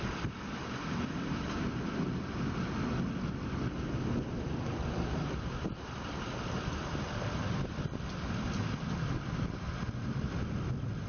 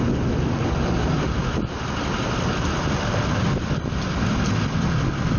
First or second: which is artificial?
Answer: first